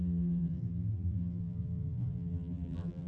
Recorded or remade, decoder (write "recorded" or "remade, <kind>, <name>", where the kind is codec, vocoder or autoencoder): remade, vocoder, BigVGAN v2